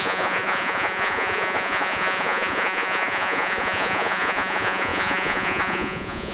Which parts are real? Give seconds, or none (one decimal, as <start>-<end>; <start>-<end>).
none